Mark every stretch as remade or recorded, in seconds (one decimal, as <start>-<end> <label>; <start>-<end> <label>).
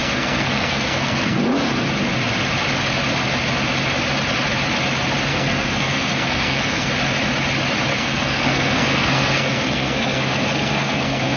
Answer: 0.0-1.4 remade; 1.4-5.3 recorded; 5.3-6.9 remade; 6.9-7.9 recorded; 7.9-11.4 remade